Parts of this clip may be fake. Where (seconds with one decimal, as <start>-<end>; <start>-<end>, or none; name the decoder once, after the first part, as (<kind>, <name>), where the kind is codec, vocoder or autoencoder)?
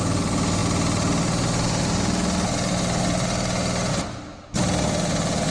none